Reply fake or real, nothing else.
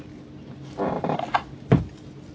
real